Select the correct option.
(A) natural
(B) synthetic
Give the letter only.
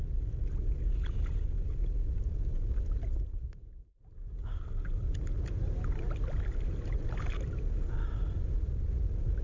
A